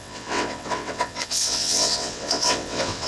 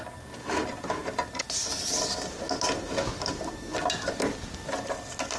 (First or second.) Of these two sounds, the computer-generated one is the first